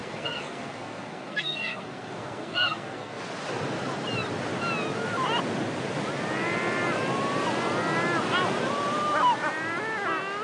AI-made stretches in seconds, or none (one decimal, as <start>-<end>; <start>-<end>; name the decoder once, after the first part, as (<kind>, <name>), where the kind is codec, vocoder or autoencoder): 0.0-3.2 (codec, SNAC)